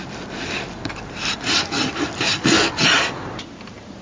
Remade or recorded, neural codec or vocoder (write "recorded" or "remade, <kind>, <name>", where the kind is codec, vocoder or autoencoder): recorded